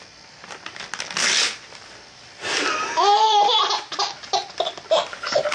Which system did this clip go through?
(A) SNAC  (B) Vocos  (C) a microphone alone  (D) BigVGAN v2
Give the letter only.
C